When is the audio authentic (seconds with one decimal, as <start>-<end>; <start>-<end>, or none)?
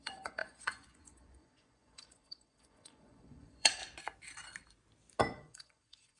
3.8-5.2